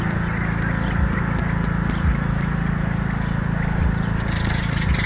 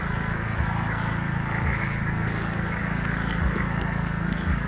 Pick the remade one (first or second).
second